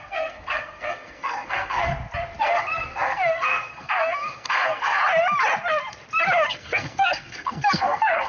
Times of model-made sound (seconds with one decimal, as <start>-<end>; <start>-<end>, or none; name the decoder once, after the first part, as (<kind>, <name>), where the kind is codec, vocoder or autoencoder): 0.0-1.9 (codec, SNAC); 2.4-5.0; 6.5-8.3